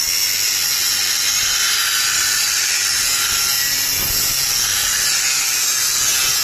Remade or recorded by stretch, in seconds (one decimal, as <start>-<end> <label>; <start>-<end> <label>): 0.0-6.4 recorded